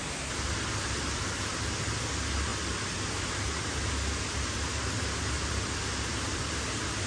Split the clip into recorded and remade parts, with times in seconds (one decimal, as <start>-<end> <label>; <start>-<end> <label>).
0.0-7.1 recorded